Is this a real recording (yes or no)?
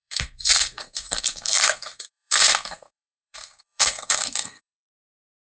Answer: no